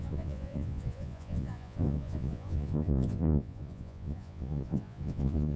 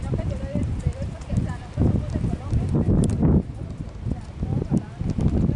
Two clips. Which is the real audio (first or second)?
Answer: second